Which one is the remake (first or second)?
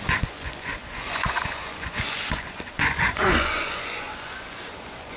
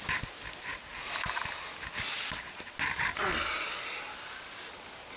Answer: first